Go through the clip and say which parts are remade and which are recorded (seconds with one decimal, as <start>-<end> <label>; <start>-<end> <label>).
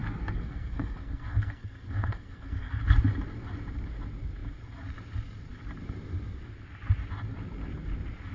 0.0-2.8 remade; 2.8-8.3 recorded